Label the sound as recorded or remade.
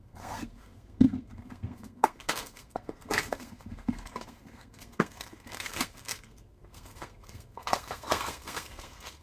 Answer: remade